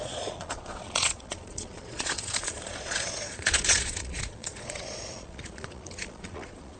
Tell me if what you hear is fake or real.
fake